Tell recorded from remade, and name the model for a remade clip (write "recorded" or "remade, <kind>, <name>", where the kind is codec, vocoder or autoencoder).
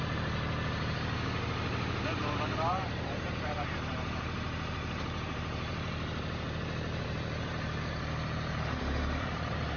remade, vocoder, BigVGAN v2